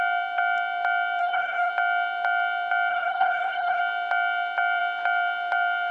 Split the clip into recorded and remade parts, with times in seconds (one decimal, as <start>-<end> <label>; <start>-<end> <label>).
0.0-1.2 recorded; 1.2-1.7 remade; 1.7-2.9 recorded; 2.9-3.8 remade; 3.8-5.9 recorded